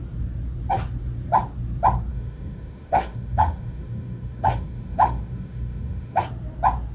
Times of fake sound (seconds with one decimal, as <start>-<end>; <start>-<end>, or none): 2.1-6.2